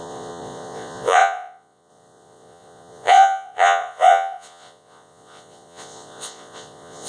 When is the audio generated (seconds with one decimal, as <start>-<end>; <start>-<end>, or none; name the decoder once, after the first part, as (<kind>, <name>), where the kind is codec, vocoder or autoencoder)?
0.0-7.1 (vocoder, Vocos)